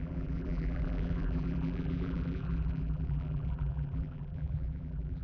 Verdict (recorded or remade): remade